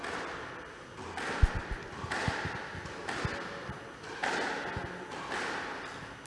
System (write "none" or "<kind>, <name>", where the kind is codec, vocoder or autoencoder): none